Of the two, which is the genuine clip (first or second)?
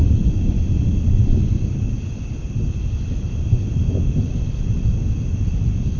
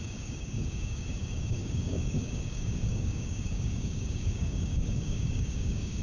first